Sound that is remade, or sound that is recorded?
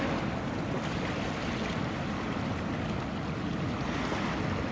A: recorded